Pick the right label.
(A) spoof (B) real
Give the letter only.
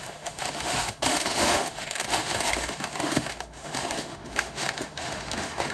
A